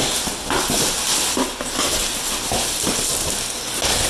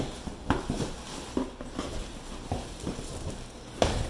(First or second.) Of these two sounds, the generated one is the second